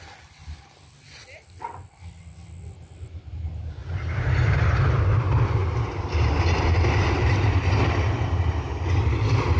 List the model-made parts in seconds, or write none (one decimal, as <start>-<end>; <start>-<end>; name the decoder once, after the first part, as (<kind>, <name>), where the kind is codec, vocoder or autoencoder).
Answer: none